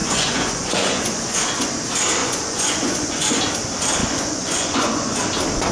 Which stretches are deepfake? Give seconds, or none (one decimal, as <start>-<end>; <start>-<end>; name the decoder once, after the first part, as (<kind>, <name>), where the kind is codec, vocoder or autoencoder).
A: 0.0-1.7 (vocoder, Vocos); 2.2-3.4; 4.0-5.2

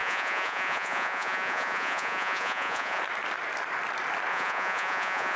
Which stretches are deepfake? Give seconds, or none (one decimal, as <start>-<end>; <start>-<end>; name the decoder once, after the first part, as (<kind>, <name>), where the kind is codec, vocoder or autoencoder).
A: 0.0-3.0 (vocoder, Vocos); 4.3-5.4

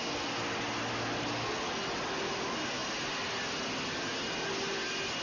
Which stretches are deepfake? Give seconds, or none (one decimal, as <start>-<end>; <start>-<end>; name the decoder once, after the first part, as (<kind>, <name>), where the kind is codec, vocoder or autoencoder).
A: none

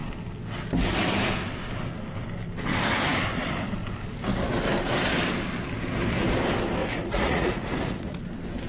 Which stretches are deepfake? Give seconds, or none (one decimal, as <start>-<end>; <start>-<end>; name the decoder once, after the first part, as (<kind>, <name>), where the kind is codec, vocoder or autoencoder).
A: 6.8-8.2 (vocoder, Vocos)

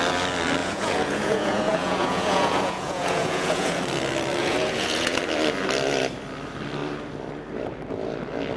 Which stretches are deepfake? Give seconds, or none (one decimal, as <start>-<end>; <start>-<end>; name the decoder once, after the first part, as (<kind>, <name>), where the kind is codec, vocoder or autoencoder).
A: 0.6-3.8 (vocoder, Vocos); 4.4-5.2

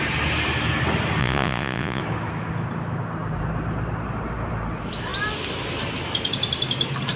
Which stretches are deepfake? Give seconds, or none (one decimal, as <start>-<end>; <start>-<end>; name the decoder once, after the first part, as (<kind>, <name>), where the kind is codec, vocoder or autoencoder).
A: 1.2-2.0 (vocoder, Vocos)

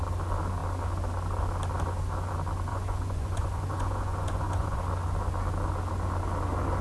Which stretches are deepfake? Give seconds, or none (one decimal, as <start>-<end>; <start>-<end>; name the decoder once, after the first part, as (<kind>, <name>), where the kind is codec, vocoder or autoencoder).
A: 2.7-4.8 (vocoder, Vocos)